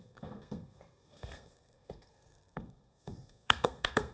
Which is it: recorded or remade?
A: remade